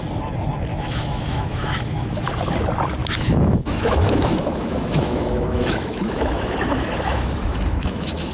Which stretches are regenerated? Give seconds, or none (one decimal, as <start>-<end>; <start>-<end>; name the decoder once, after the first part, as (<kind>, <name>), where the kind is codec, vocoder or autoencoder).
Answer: 0.7-2.3 (autoencoder, DAC-VAE); 3.0-8.3